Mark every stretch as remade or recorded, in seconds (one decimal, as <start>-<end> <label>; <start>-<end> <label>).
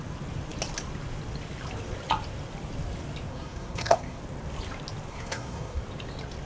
0.0-3.3 recorded; 3.3-4.2 remade; 4.2-5.1 recorded; 5.1-5.8 remade; 5.8-6.5 recorded